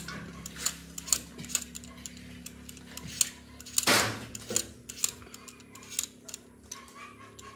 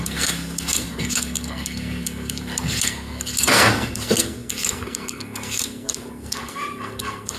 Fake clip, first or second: second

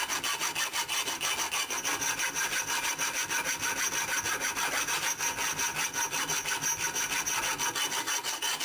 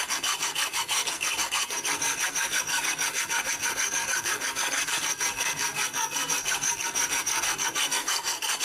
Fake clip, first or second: second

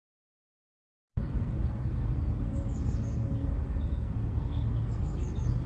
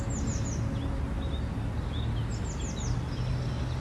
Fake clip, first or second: first